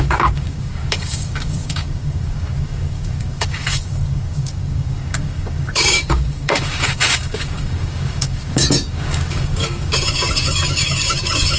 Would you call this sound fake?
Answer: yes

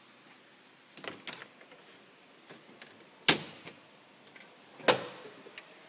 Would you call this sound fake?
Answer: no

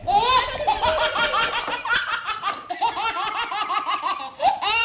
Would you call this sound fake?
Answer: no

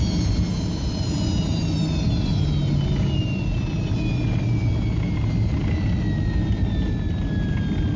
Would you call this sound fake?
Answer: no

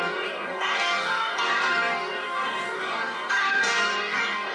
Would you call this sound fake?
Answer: yes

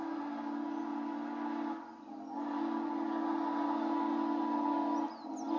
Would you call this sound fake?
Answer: no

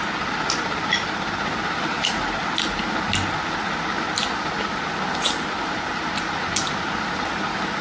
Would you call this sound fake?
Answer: no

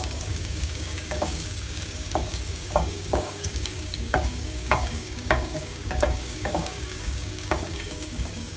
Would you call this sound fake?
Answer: yes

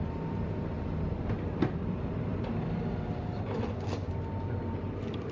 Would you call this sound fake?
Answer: no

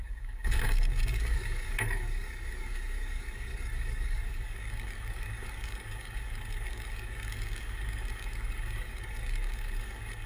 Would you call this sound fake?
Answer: yes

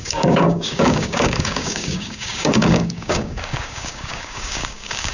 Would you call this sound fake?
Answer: yes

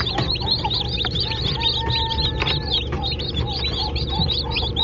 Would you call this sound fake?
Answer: no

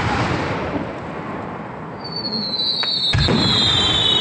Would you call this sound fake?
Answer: no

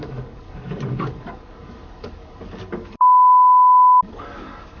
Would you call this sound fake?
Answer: yes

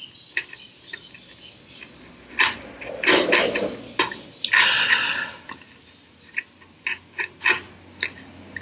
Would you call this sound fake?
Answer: no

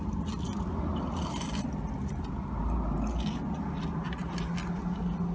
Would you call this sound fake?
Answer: no